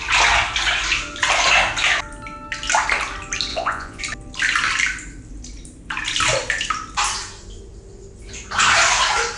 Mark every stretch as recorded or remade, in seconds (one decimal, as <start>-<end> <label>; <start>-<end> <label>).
0.0-3.5 recorded; 3.5-4.0 remade; 4.0-9.4 recorded